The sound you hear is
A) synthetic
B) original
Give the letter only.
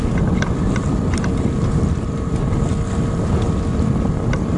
B